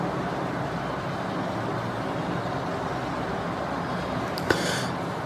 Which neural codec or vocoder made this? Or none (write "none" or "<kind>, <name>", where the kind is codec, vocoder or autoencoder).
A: none